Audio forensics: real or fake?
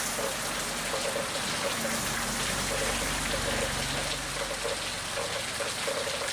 real